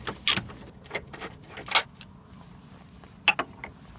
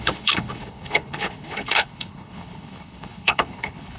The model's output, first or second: second